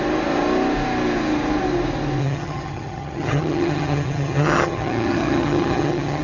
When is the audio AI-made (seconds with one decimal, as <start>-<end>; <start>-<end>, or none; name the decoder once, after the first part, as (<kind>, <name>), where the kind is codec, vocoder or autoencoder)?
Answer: 2.2-6.2 (vocoder, HiFi-GAN)